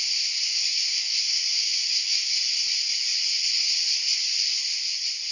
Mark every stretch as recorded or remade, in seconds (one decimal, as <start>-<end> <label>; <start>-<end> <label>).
0.0-0.5 recorded; 0.5-2.4 remade; 2.4-5.3 recorded